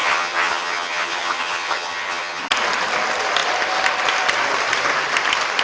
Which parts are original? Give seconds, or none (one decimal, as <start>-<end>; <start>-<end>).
2.4-5.6